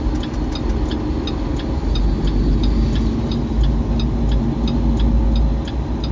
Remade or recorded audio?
recorded